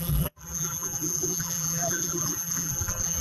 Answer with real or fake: fake